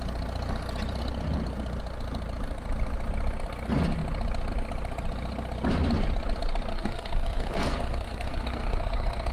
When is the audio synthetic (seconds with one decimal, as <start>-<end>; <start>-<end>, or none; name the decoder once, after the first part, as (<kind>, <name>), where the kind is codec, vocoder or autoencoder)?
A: 6.7-9.3 (codec, SNAC)